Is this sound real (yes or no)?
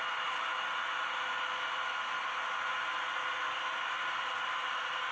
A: yes